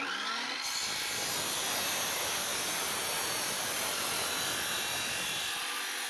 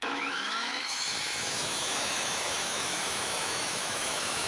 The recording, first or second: first